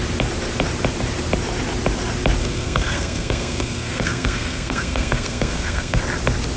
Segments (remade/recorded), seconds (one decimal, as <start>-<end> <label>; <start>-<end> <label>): 0.0-2.4 recorded; 2.4-6.0 remade; 6.0-6.6 recorded